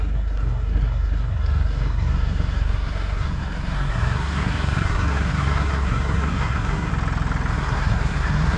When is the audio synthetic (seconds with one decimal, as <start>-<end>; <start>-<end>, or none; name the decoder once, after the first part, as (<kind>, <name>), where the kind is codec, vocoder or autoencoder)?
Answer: 0.0-6.9 (codec, SNAC); 7.5-8.6